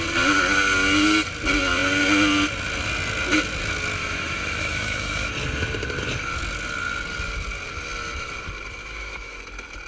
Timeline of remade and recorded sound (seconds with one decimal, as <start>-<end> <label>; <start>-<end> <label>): 0.0-4.0 recorded; 4.0-5.3 remade; 5.3-8.8 recorded; 8.8-9.4 remade; 9.4-9.9 recorded